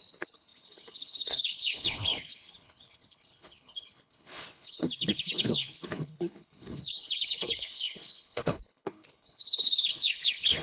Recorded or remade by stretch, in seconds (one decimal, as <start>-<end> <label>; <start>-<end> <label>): 0.0-10.6 remade